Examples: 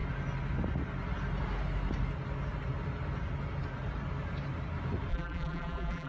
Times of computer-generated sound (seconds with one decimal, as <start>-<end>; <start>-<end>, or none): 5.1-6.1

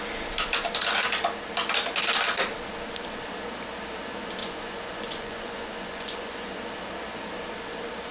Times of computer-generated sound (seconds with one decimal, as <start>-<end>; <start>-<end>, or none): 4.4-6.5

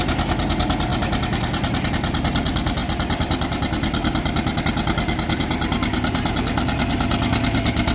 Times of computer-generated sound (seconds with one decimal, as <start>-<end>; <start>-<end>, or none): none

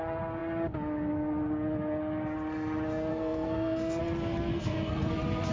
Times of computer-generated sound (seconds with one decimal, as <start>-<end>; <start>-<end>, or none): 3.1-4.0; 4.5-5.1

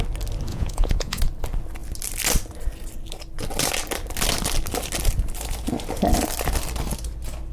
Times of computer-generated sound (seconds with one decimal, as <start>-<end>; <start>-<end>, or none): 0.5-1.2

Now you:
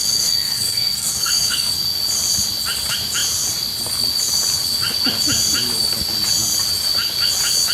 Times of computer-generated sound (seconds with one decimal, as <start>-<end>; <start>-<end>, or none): 0.0-1.7

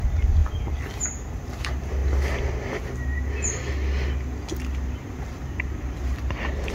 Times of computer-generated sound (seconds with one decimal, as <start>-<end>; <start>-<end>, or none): none